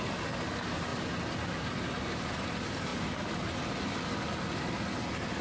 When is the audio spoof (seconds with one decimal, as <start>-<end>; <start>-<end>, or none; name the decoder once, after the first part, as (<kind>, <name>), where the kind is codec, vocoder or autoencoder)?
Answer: none